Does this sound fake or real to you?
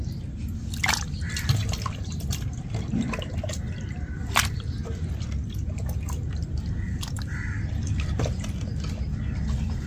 fake